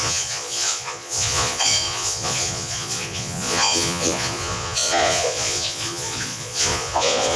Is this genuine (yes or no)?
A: no